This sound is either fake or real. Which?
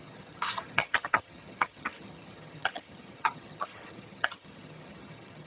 fake